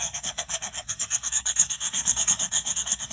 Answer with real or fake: fake